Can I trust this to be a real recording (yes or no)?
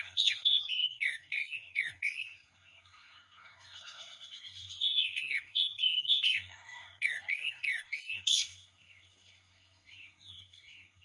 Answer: no